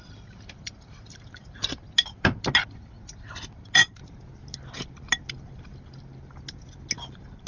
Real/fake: real